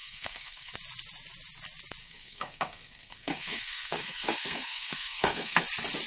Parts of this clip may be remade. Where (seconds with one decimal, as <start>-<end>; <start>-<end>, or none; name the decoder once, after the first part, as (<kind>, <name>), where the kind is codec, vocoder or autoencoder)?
0.0-0.7 (codec, SNAC); 2.0-5.6